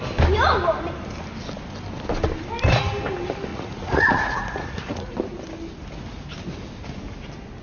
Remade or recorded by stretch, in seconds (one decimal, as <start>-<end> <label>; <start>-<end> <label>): 0.0-3.5 recorded; 3.5-5.1 remade; 5.1-7.6 recorded